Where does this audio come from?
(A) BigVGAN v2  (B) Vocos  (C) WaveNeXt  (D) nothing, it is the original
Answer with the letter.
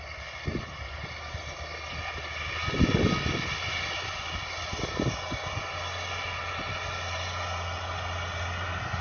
D